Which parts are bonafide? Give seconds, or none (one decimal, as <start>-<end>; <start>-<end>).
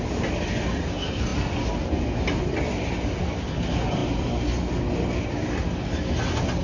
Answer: 0.0-6.6